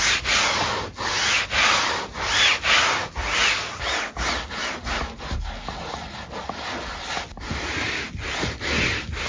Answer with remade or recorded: recorded